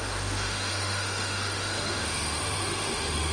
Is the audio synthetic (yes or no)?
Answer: yes